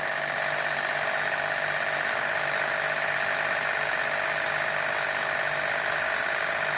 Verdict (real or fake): real